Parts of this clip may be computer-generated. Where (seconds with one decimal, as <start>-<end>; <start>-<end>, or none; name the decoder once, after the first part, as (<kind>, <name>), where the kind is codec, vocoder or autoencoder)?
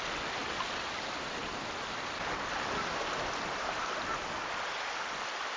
none